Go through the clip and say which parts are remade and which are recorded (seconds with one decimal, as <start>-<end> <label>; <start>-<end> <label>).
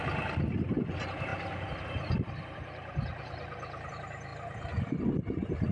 0.0-5.7 recorded